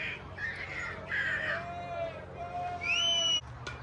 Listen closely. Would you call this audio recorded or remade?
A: recorded